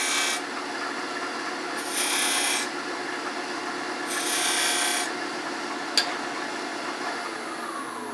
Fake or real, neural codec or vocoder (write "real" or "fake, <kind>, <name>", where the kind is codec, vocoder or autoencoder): real